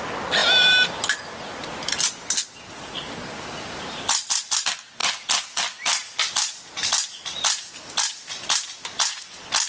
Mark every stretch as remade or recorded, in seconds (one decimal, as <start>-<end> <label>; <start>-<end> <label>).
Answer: 0.0-0.4 recorded; 0.4-0.9 remade; 0.9-9.7 recorded